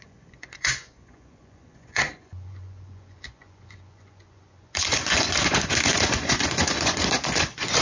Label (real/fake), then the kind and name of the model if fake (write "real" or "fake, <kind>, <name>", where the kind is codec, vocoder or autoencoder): fake, vocoder, Vocos